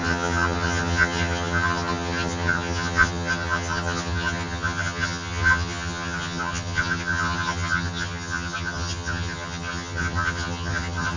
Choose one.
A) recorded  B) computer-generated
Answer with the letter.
B